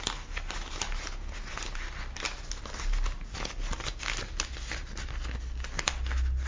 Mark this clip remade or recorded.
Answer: recorded